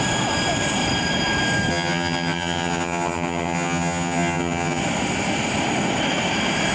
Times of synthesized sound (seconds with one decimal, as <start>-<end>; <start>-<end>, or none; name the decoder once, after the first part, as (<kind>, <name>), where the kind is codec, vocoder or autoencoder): 1.7-4.8 (vocoder, HiFi-GAN)

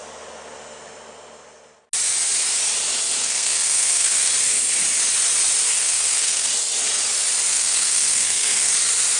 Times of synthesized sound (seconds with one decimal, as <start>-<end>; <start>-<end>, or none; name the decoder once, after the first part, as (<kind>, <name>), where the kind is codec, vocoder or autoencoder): 3.2-4.3 (codec, SNAC); 5.7-6.5; 7.5-8.7